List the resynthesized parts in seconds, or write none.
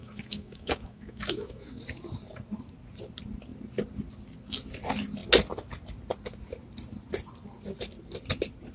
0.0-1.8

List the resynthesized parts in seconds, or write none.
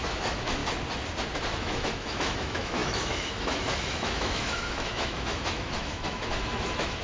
0.0-0.6; 1.6-7.0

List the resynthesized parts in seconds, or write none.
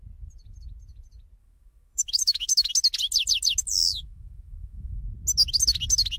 1.4-2.7; 3.8-5.0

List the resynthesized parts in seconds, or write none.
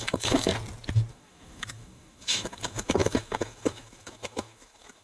0.0-0.5; 1.1-5.0